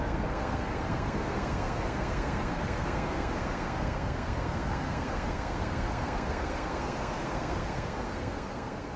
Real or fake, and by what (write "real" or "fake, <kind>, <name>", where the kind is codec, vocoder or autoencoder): fake, codec, SNAC